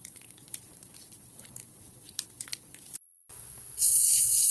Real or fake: fake